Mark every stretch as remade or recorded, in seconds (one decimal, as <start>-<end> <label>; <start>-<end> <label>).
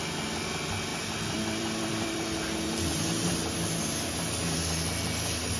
0.0-0.9 recorded; 0.9-4.3 remade; 4.3-5.6 recorded